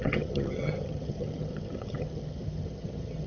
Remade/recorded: remade